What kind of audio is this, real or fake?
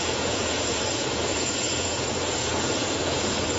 fake